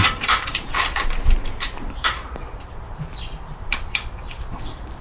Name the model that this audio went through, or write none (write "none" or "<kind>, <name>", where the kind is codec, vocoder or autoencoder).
vocoder, BigVGAN v2